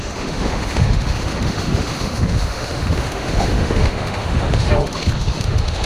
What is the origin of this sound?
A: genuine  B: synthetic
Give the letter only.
B